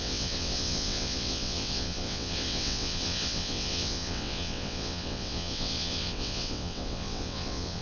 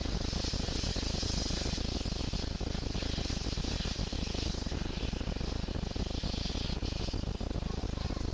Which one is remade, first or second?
first